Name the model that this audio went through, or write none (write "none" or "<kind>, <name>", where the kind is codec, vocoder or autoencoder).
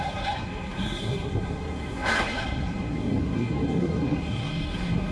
codec, SNAC